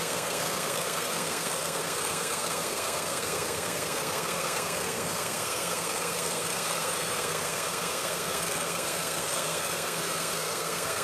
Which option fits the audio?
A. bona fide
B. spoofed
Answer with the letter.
B